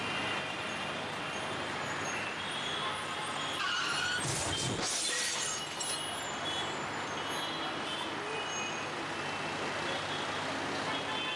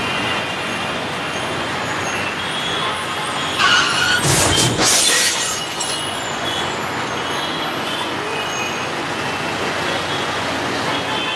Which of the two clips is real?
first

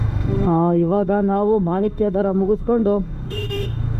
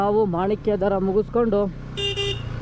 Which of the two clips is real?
second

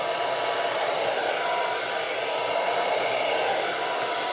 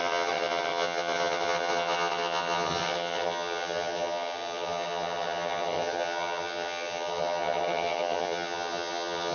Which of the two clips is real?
first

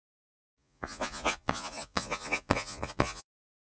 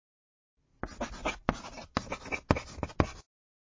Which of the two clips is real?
second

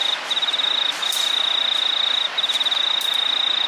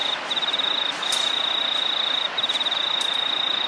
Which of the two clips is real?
first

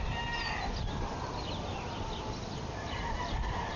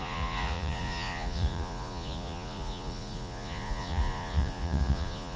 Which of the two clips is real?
first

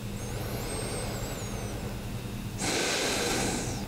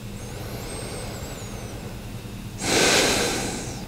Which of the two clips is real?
first